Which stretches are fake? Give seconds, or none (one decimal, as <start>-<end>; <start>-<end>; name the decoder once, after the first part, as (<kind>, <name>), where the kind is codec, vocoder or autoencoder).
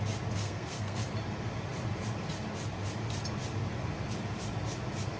0.4-1.1 (codec, SNAC)